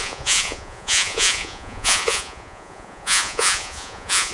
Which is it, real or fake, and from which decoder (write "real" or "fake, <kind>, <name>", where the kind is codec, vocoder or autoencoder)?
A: fake, vocoder, Vocos